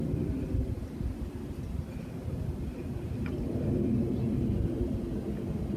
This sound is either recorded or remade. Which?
recorded